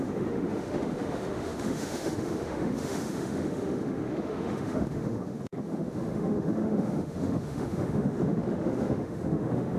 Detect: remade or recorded remade